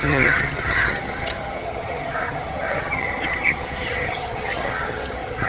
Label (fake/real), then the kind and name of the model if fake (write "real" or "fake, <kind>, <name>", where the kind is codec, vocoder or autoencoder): fake, vocoder, HiFi-GAN